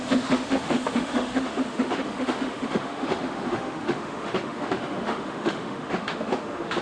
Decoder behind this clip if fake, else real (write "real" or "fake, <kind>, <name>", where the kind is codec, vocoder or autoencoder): fake, autoencoder, DAC-VAE